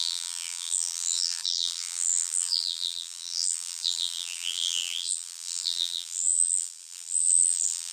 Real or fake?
fake